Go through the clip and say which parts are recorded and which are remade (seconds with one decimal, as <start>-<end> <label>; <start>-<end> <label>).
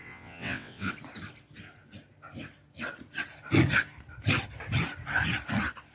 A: 0.0-0.9 remade; 0.9-5.9 recorded